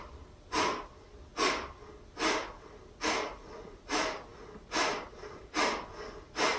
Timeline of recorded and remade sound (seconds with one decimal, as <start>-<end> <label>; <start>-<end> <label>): 0.0-1.3 remade; 1.3-3.0 recorded; 3.0-4.3 remade; 4.3-5.1 recorded; 5.1-6.6 remade